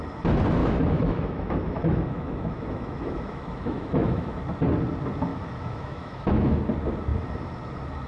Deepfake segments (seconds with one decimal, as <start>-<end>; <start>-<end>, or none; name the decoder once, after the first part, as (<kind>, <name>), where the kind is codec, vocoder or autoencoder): 0.6-4.4 (autoencoder, DAC-VAE); 5.3-6.6

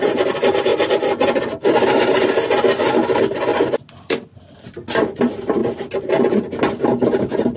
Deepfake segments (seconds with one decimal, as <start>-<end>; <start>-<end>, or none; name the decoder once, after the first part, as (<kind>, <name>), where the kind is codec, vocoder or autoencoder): none

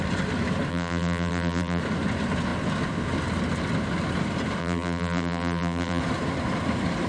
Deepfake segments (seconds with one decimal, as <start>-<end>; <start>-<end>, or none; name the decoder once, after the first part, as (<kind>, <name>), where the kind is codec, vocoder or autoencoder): 0.7-1.8 (vocoder, BigVGAN v2); 4.6-6.0

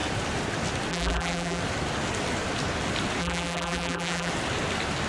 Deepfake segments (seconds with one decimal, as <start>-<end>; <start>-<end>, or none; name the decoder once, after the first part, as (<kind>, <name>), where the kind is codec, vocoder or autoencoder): 0.9-1.6 (vocoder, BigVGAN v2); 3.2-4.3

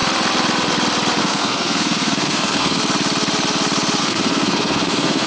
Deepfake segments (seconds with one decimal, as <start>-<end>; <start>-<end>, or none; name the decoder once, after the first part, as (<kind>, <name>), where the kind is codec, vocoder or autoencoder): 1.2-2.8 (codec, SNAC); 4.0-5.3

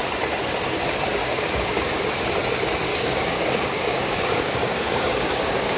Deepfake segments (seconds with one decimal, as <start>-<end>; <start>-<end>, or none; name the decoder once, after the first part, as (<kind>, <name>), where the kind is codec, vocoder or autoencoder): 1.2-2.0 (codec, DAC); 2.9-5.8